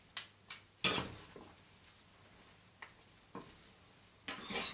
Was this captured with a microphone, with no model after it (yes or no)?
yes